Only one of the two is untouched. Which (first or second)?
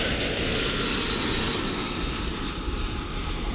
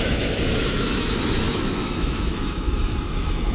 first